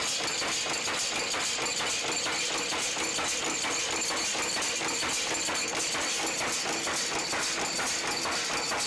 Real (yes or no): yes